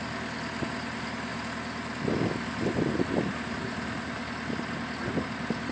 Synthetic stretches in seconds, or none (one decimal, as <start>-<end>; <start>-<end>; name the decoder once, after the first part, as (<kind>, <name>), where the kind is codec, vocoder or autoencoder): none